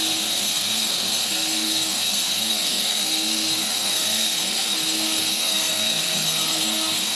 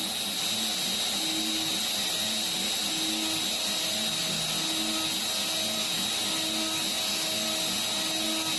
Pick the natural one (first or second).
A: second